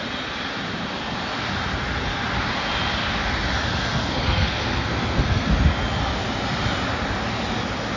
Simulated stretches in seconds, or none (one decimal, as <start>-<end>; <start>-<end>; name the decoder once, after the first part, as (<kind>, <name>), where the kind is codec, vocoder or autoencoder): 3.8-5.5 (codec, SNAC)